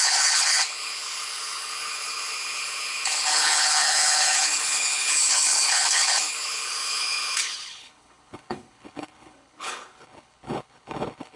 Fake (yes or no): yes